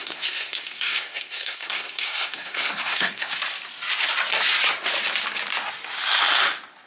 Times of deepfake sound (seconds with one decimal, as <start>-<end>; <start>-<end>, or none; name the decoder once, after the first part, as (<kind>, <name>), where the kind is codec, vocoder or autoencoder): 0.0-3.4 (codec, SNAC)